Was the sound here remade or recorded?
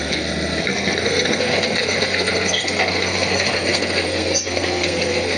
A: remade